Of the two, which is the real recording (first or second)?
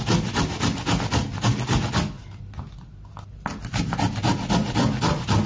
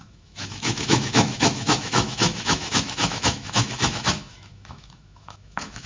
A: first